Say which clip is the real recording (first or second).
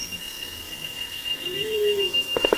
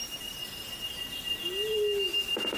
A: second